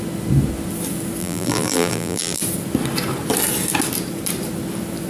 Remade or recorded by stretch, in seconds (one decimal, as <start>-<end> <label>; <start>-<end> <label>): 0.0-1.2 recorded; 1.2-2.4 remade; 2.4-5.1 recorded

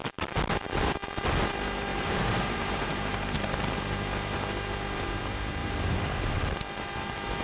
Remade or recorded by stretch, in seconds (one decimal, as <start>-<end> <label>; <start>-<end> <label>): 0.0-1.9 recorded; 1.9-3.7 remade; 3.7-5.6 recorded; 5.6-6.4 remade; 6.4-7.4 recorded

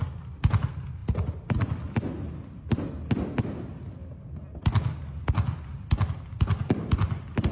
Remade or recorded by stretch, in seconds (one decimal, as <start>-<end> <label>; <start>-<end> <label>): 0.0-7.5 recorded

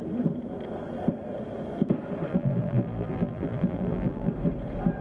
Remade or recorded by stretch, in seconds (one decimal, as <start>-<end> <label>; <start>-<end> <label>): 0.0-2.3 recorded; 2.3-4.3 remade; 4.3-5.0 recorded

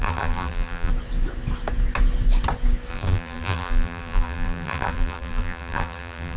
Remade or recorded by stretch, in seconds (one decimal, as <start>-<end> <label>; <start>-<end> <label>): 0.0-0.9 remade; 0.9-2.9 recorded; 2.9-6.4 remade

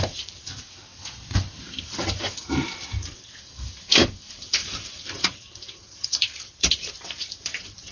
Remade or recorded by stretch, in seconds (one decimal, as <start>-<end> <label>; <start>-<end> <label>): 0.0-0.9 remade; 0.9-1.8 recorded; 1.8-7.9 remade